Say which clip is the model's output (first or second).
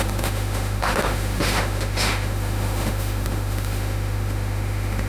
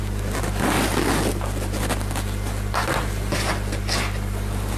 first